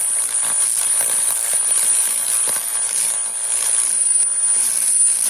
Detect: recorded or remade recorded